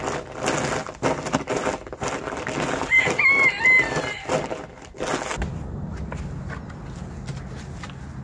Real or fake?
real